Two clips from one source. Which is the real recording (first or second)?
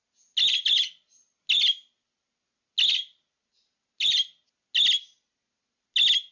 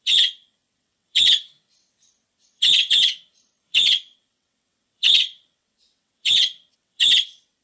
first